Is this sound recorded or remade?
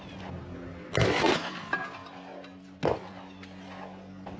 recorded